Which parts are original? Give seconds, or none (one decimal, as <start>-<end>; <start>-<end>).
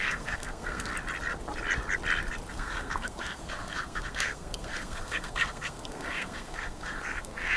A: 0.9-2.5